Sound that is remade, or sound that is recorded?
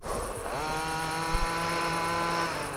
remade